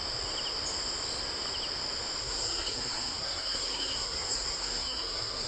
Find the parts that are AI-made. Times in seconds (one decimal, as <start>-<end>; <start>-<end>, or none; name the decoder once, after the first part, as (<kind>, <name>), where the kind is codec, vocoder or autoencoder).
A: 2.2-5.5 (codec, SNAC)